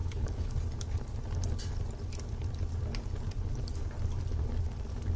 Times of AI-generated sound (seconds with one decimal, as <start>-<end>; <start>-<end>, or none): 0.0-0.5